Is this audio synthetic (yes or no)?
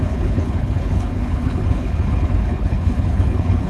yes